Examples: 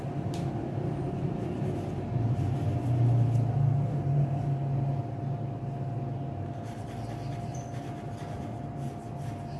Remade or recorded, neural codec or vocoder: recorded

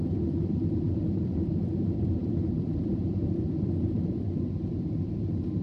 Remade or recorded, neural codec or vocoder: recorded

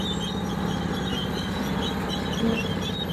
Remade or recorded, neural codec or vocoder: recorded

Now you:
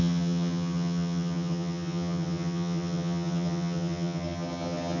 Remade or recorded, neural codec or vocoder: remade, vocoder, HiFi-GAN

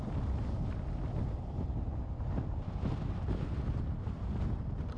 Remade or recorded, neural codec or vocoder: recorded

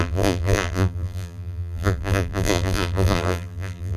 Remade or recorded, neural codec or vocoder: remade, vocoder, BigVGAN v2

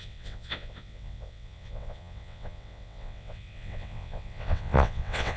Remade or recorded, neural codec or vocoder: remade, vocoder, WaveNeXt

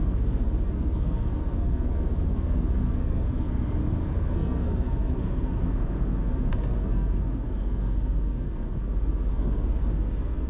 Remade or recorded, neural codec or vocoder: remade, codec, SNAC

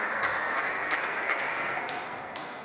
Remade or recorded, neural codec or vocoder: remade, codec, SNAC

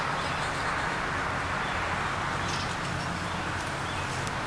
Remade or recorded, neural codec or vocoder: recorded